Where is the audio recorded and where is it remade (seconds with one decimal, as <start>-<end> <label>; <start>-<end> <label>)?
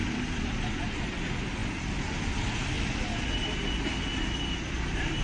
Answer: 0.0-5.2 recorded